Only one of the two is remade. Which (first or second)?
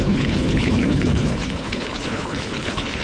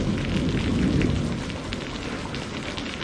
first